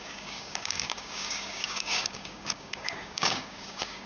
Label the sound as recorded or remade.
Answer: remade